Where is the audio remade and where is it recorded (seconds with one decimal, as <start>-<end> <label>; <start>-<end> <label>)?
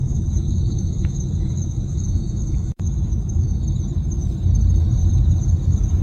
0.0-3.6 remade; 3.6-6.0 recorded